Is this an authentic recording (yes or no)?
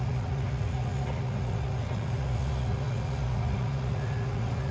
no